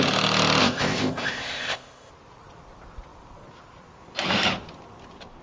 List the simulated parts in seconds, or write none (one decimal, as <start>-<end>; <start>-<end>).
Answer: 0.6-2.1